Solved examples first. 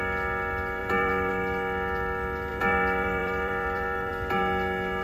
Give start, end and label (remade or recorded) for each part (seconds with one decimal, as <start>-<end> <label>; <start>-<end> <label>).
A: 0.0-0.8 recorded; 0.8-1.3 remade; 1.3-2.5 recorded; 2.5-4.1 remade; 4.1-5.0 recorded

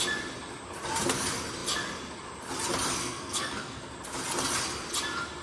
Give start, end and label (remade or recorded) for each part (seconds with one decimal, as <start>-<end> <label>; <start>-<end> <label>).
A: 0.0-3.0 recorded; 3.0-3.9 remade; 3.9-5.4 recorded

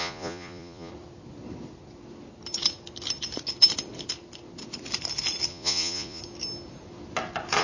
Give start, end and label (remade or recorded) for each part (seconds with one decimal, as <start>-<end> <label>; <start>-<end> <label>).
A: 0.0-0.9 remade; 0.9-5.5 recorded; 5.5-6.2 remade; 6.2-7.6 recorded

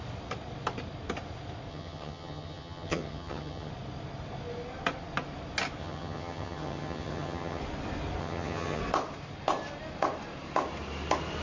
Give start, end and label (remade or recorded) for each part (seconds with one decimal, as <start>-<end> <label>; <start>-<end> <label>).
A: 0.0-1.7 recorded; 1.7-3.7 remade; 3.7-5.8 recorded; 5.8-7.6 remade; 7.6-8.2 recorded; 8.2-8.8 remade; 8.8-11.4 recorded

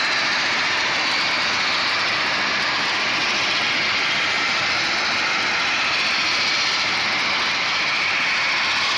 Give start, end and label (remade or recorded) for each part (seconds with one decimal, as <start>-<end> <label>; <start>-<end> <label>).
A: 0.0-9.0 recorded

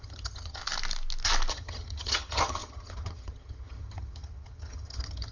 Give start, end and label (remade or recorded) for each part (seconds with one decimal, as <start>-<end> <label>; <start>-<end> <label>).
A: 0.0-0.6 remade; 0.6-1.5 recorded; 1.5-5.3 remade